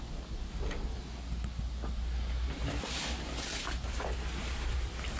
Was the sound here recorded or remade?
recorded